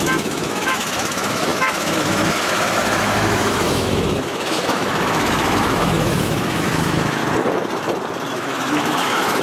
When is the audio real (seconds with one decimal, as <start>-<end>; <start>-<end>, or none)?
7.2-8.3